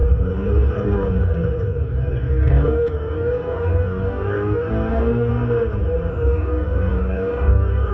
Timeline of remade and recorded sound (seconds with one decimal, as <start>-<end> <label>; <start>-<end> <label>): 0.0-5.3 remade; 5.3-6.1 recorded; 6.1-7.9 remade